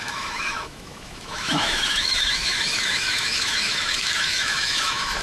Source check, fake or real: fake